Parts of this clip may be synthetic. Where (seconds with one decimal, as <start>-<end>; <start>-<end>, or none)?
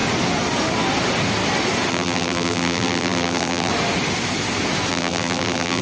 1.9-3.7; 4.9-5.8